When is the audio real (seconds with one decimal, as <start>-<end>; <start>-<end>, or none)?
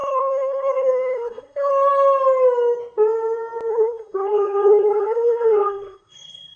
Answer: 1.7-3.7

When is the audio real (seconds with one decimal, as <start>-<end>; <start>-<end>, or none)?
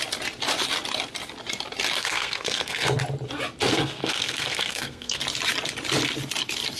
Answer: 0.0-2.0; 3.0-3.7; 5.2-6.8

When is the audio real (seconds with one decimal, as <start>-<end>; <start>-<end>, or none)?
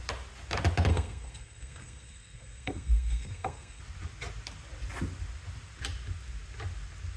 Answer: 0.0-0.9; 3.8-7.2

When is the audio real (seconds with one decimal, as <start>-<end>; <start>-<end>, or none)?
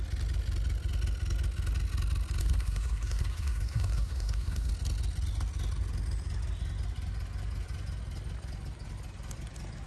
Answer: 0.0-2.4; 4.7-9.9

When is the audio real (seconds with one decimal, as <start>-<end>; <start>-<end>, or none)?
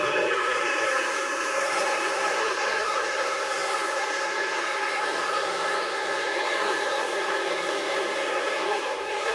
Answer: none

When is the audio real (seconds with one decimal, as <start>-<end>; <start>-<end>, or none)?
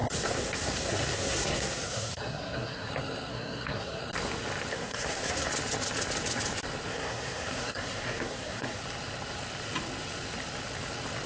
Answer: 2.9-3.3; 4.0-4.7; 5.5-6.9; 8.8-11.3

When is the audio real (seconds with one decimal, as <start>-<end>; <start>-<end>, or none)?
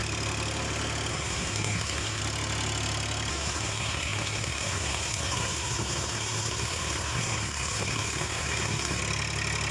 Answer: 0.0-1.1; 2.2-3.3; 9.0-9.7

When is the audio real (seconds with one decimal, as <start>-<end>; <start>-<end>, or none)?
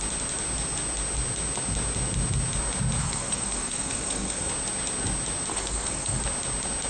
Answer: 0.0-3.0; 4.5-5.5; 6.2-6.9